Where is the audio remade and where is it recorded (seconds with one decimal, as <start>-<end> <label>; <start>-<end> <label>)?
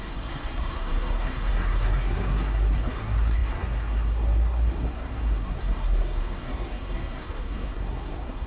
0.0-8.5 remade